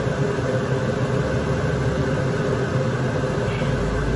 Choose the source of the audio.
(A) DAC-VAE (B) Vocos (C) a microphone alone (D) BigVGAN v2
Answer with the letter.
C